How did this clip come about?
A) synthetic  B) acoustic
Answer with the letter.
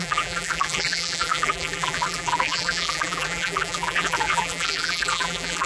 A